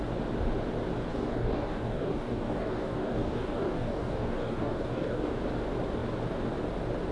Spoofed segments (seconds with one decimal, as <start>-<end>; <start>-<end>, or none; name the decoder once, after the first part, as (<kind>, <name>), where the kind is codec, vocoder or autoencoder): 1.1-5.4 (codec, DAC)